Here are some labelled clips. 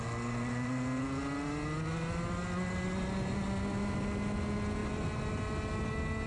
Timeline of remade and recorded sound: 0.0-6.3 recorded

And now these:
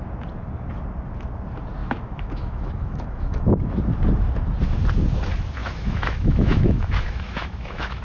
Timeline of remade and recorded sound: 0.0-1.8 recorded; 1.8-3.8 remade; 3.8-5.6 recorded; 5.6-8.0 remade

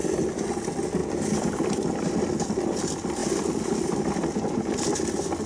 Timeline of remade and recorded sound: 0.0-5.5 recorded